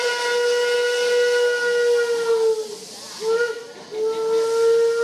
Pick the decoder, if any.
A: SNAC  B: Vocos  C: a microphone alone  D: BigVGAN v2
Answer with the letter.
C